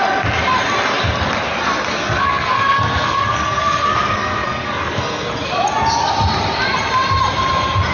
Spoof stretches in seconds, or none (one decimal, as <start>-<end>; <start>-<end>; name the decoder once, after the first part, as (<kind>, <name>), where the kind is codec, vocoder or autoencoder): 1.9-5.3 (codec, SNAC)